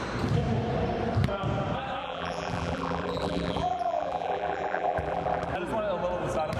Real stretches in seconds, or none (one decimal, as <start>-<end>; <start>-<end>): 0.0-2.0; 5.5-6.6